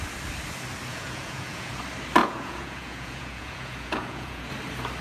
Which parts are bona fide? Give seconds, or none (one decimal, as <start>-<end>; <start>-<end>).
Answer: 0.0-0.9; 1.8-2.2; 4.5-5.0